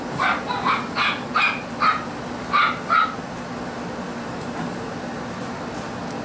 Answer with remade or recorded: recorded